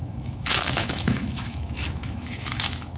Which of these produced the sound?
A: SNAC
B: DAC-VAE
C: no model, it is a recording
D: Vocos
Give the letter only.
B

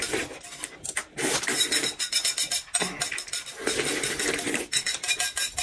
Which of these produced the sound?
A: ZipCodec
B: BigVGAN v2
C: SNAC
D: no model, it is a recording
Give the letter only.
D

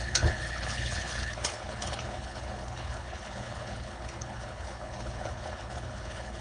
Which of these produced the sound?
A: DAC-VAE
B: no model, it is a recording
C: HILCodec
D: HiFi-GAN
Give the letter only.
C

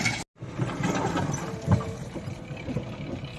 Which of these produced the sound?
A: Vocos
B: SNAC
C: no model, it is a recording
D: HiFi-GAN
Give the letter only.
C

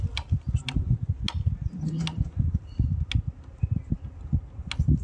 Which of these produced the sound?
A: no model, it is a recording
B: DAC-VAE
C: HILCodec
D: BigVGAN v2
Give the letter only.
A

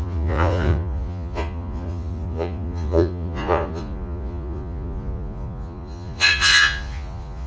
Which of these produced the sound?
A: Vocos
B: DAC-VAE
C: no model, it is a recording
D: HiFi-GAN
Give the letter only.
A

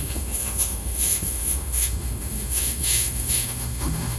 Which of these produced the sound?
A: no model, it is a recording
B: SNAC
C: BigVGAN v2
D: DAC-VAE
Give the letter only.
D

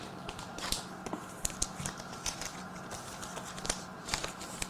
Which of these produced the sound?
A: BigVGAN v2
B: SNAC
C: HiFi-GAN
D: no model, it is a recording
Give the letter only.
D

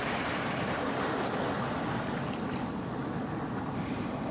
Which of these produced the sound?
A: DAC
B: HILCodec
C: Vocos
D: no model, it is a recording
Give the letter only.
D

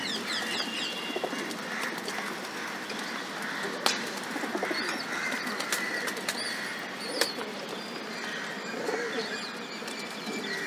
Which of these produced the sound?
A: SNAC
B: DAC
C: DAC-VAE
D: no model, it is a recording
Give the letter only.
D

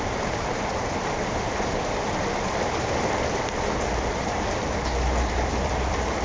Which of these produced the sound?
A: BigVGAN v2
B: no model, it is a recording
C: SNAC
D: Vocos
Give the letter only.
A